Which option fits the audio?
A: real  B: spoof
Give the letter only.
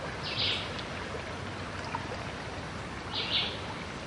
A